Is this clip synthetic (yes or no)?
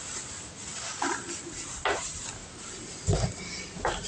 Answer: no